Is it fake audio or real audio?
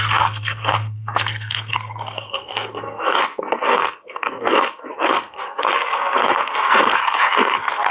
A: fake